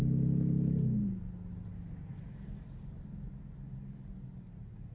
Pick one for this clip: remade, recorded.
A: recorded